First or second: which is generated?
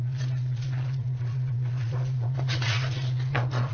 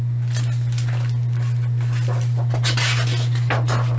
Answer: first